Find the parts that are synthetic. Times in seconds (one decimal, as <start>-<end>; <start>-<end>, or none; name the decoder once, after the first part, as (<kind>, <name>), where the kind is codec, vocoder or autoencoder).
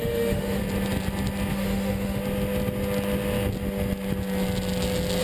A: 0.0-0.6 (autoencoder, DAC-VAE); 1.5-2.2